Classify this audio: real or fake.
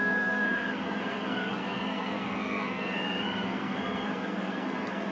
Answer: fake